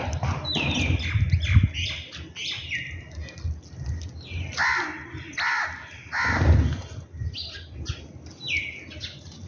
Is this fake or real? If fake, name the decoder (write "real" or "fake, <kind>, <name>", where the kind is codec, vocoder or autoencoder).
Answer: real